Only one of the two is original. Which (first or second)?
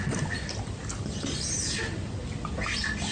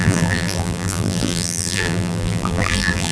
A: first